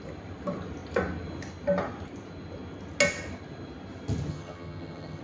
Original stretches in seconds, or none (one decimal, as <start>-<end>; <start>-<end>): 0.0-4.3